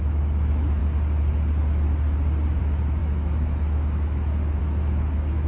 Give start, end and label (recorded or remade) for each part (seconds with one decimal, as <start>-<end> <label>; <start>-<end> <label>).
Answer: 0.0-0.8 remade; 0.8-2.6 recorded; 2.6-5.5 remade